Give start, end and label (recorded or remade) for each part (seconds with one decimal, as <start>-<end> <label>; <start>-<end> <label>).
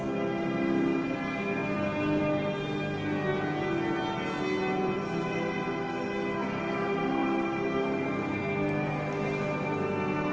0.0-10.3 recorded